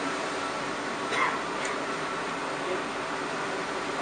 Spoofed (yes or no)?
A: no